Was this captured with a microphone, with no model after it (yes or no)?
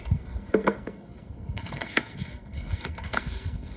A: no